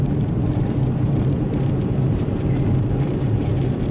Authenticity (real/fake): fake